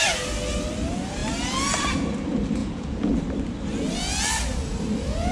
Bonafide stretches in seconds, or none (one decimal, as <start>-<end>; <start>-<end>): 0.0-2.6; 3.2-5.3